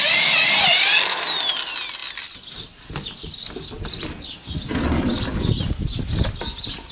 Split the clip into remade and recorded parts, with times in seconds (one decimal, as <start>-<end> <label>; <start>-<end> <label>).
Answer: 0.0-6.9 recorded